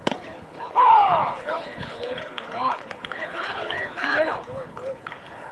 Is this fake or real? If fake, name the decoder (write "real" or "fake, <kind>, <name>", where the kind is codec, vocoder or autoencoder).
fake, codec, HILCodec